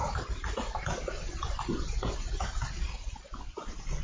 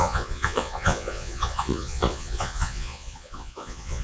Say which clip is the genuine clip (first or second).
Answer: first